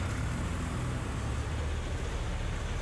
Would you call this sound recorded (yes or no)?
yes